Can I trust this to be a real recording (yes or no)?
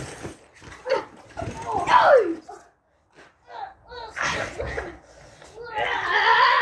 yes